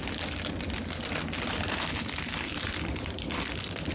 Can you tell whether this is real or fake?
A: fake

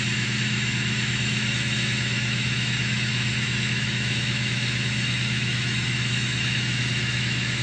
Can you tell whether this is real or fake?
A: fake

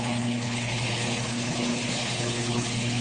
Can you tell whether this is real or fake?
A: fake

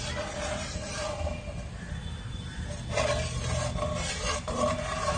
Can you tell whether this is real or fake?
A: real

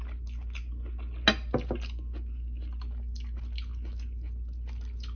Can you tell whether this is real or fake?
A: real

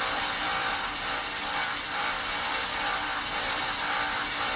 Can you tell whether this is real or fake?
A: fake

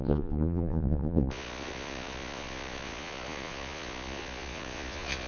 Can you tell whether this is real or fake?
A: fake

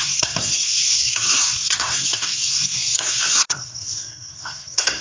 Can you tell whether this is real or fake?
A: fake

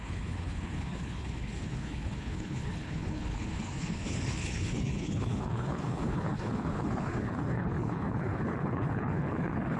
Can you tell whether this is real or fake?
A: fake